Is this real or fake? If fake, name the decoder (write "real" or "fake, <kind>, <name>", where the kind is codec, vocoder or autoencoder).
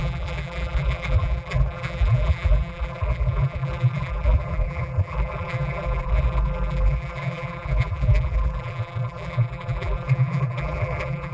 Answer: fake, vocoder, BigVGAN v2